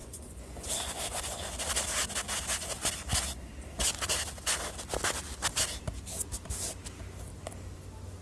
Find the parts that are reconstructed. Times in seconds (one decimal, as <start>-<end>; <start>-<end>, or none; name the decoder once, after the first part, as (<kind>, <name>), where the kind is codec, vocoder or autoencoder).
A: 0.0-1.4 (vocoder, Vocos)